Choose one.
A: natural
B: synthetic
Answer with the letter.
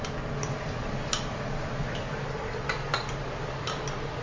A